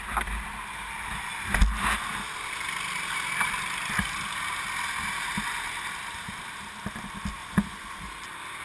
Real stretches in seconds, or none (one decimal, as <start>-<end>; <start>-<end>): 0.0-7.4; 8.0-8.6